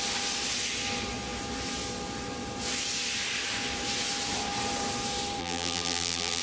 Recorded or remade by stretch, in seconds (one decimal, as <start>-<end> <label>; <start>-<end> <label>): 0.0-5.4 recorded; 5.4-6.4 remade